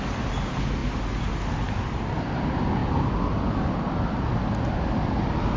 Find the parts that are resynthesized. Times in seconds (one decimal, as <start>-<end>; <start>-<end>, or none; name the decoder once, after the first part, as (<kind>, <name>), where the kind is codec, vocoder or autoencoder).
none